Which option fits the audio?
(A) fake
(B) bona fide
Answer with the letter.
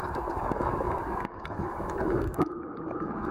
A